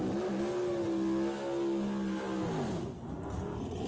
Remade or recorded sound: recorded